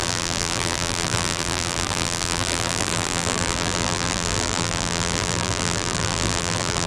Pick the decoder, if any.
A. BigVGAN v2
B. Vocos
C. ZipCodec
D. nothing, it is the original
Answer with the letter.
A